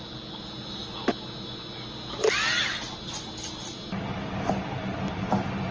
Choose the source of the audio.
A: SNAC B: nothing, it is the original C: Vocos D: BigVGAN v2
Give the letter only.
B